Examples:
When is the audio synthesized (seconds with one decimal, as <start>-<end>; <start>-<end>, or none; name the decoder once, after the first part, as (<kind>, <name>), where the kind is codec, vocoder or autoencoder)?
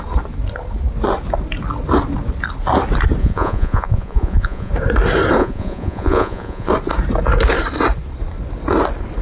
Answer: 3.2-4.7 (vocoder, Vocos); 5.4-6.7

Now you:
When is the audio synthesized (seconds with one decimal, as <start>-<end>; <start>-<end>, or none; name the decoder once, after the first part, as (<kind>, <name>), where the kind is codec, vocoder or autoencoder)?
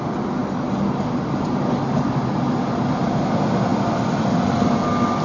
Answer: none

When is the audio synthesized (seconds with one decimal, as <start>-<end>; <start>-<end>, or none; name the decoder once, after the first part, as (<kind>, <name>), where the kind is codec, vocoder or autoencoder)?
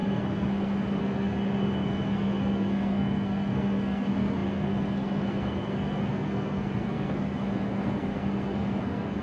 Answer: 0.0-9.2 (codec, SNAC)